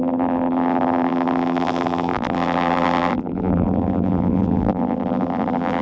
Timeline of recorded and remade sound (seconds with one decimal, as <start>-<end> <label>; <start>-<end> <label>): 0.0-5.8 remade